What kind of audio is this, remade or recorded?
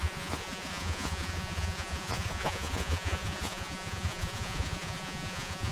remade